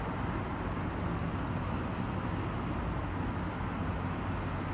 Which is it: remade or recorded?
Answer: recorded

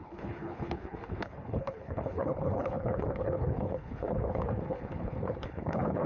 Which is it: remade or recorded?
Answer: remade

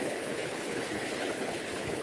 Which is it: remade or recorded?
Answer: remade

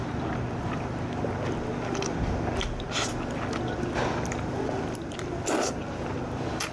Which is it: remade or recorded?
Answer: recorded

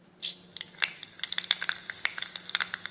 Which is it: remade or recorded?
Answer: recorded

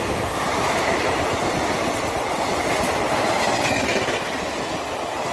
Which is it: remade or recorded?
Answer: recorded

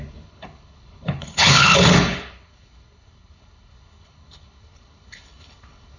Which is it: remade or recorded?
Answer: remade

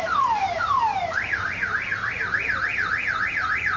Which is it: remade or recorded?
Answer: recorded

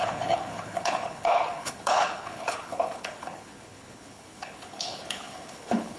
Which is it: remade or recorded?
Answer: remade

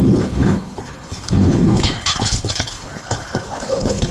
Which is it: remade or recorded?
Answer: remade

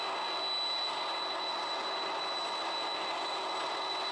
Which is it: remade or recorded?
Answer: recorded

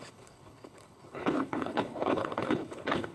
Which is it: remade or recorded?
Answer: remade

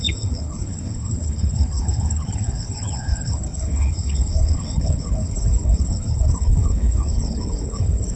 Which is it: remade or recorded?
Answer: remade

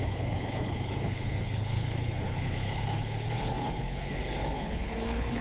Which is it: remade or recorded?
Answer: remade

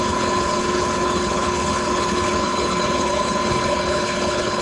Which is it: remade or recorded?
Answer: remade